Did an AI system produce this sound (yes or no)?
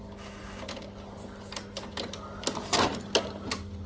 no